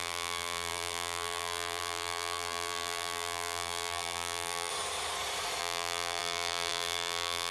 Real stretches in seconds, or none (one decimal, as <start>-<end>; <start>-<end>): 4.7-5.6